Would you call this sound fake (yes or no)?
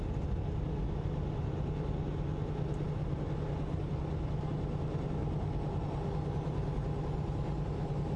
no